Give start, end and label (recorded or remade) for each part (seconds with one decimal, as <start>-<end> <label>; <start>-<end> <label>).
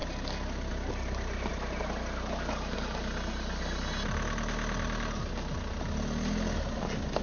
0.0-7.2 recorded